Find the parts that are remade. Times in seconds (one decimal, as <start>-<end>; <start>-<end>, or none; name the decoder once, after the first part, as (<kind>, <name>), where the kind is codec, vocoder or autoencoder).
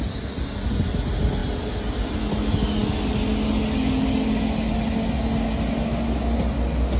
none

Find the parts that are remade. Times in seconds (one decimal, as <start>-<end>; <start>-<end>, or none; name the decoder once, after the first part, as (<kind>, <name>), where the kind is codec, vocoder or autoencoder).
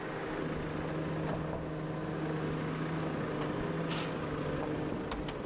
none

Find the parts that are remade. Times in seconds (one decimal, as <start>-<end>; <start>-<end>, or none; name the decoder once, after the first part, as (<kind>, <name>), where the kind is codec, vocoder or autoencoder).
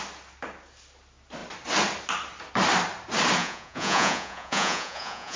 3.4-5.4 (vocoder, Vocos)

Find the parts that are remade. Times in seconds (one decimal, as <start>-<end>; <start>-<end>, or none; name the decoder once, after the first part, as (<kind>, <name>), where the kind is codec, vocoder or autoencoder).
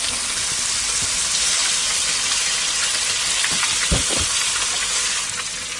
none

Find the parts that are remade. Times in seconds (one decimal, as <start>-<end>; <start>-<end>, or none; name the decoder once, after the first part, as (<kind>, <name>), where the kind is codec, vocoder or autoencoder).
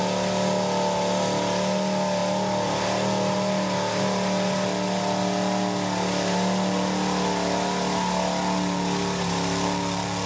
none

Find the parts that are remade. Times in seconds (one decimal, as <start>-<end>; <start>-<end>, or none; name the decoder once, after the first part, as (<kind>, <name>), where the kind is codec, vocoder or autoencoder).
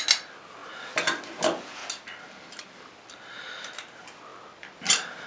none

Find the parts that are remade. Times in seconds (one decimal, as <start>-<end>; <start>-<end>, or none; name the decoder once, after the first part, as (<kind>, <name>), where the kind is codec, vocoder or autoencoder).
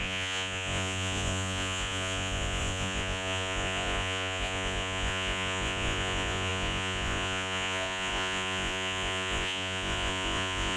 0.0-10.8 (vocoder, Vocos)